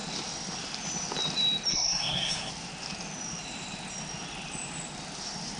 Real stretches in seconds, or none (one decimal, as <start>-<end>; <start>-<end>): 0.0-1.7; 2.5-5.6